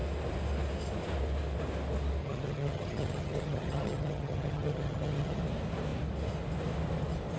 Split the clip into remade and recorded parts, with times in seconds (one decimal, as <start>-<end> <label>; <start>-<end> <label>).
0.0-2.2 recorded; 2.2-5.4 remade; 5.4-7.4 recorded